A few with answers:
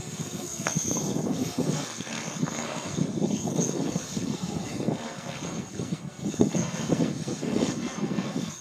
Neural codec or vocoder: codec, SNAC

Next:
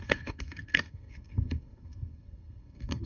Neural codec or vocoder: codec, SNAC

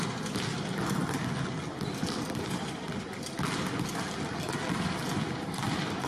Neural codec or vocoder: none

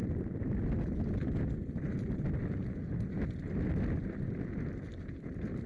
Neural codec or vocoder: none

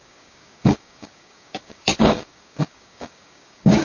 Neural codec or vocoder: codec, DAC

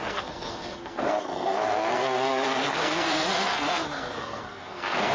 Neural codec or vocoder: codec, SNAC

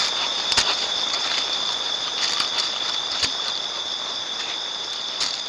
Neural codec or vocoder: vocoder, BigVGAN v2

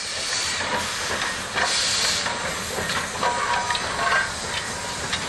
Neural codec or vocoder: none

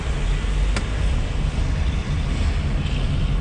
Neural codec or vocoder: none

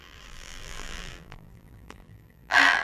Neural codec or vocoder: vocoder, BigVGAN v2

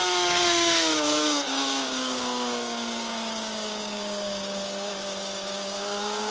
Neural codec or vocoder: codec, DAC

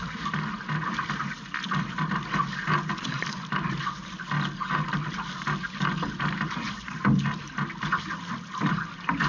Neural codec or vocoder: none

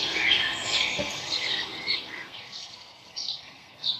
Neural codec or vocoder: codec, SNAC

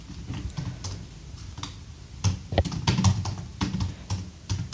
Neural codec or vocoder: none